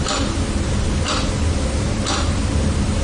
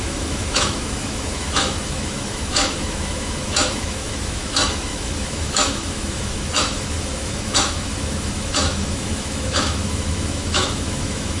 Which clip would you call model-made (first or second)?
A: second